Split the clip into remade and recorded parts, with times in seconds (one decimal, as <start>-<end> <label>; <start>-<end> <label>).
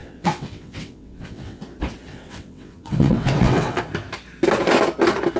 0.0-1.6 remade; 1.6-2.1 recorded; 2.1-3.8 remade; 3.8-5.4 recorded